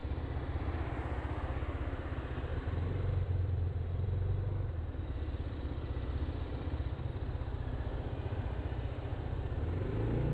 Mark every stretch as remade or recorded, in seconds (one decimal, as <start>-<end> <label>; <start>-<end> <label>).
0.0-2.5 recorded; 2.5-7.1 remade; 7.1-10.3 recorded